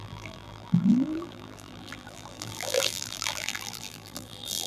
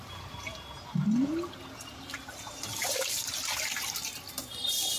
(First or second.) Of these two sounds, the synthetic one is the first